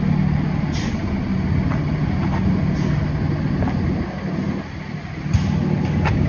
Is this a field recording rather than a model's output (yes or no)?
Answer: yes